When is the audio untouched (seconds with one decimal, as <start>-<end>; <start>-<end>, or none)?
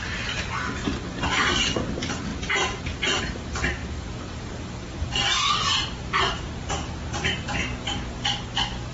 0.0-8.9